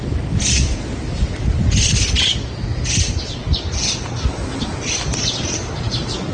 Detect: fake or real real